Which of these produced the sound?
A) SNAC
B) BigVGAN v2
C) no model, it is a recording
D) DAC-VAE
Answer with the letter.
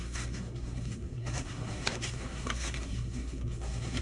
A